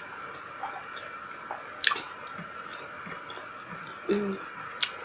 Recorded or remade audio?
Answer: recorded